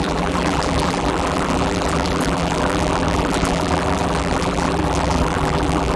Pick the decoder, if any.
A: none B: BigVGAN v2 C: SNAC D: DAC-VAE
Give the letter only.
B